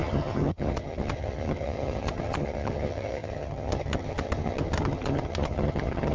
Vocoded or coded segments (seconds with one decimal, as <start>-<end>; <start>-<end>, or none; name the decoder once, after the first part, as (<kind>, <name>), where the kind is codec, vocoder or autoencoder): 0.0-6.1 (vocoder, HiFi-GAN)